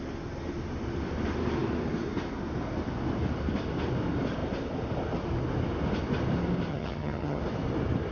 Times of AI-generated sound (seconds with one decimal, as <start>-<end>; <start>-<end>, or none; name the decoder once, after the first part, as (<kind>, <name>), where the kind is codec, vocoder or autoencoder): 6.7-7.4 (vocoder, HiFi-GAN)